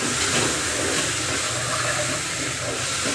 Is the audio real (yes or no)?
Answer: yes